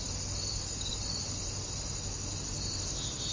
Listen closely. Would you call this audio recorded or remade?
recorded